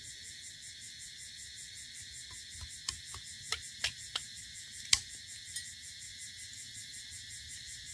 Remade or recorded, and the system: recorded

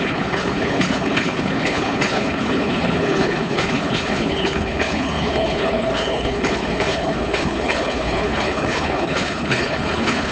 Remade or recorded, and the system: remade, codec, HILCodec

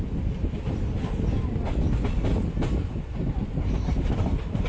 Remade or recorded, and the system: recorded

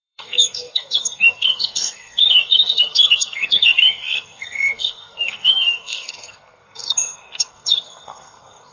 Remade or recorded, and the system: remade, codec, SNAC